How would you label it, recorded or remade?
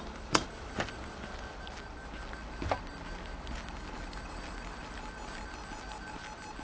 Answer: recorded